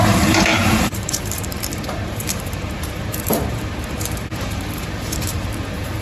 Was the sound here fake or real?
fake